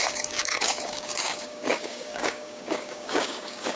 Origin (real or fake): fake